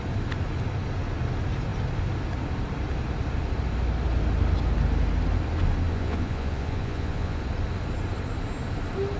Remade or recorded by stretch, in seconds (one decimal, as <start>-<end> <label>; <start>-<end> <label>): 0.0-5.9 recorded; 5.9-7.4 remade; 7.4-9.2 recorded